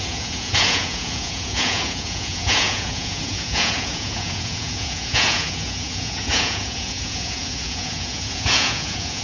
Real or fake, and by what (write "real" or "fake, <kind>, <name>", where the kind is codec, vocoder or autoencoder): fake, vocoder, Vocos